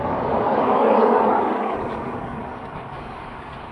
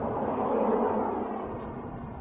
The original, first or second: second